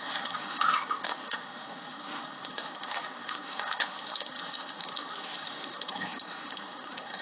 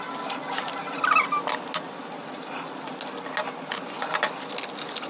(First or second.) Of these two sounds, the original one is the second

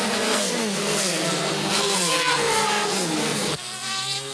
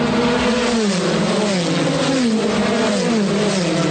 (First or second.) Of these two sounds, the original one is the second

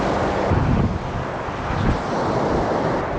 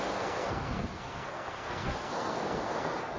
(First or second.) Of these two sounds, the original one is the first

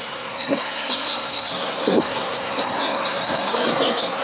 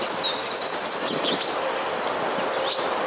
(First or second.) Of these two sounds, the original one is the second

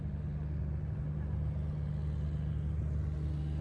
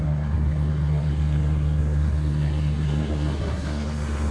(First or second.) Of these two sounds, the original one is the first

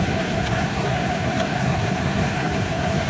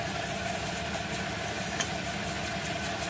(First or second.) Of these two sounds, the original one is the second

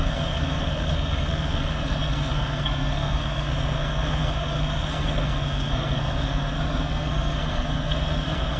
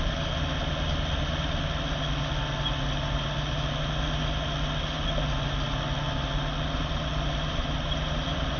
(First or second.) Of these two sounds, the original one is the second